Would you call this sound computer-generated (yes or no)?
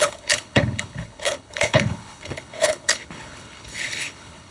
yes